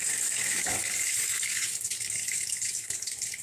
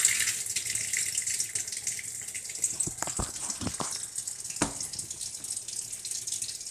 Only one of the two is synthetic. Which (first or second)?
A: first